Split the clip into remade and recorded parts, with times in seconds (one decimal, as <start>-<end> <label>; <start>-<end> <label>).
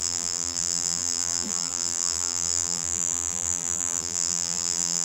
0.0-5.0 remade